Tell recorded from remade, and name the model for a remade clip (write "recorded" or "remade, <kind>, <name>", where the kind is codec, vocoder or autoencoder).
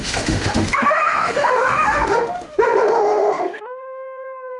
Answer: remade, autoencoder, DAC-VAE